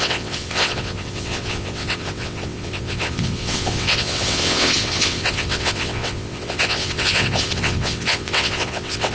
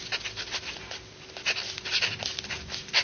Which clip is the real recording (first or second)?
second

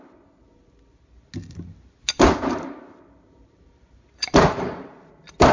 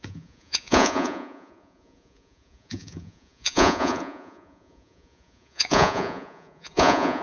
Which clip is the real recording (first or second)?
first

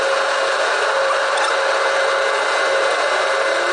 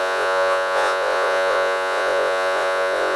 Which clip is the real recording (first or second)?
first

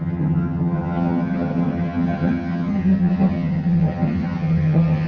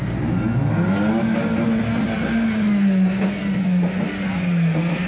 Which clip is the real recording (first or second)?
second